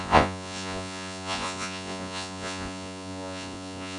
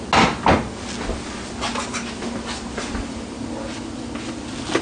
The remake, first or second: first